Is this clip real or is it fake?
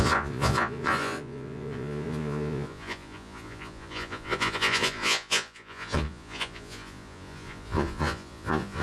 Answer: fake